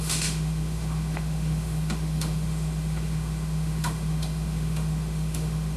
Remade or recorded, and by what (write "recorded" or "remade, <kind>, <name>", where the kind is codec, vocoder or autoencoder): remade, autoencoder, DAC-VAE